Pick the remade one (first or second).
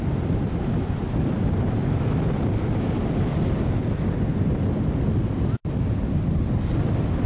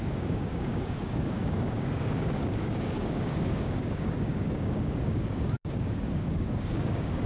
second